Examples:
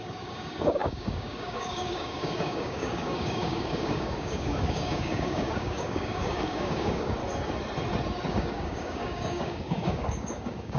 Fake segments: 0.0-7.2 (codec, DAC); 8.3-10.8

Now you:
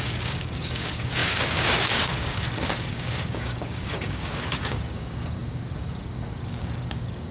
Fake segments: 0.0-7.3 (codec, DAC)

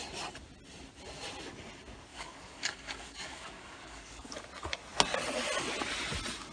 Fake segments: 2.1-4.4 (codec, DAC)